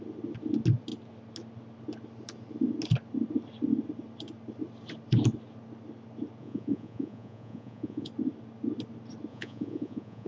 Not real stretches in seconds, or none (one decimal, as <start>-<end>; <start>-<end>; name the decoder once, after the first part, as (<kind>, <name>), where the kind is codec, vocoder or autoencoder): 6.4-8.1 (vocoder, Vocos); 9.3-10.3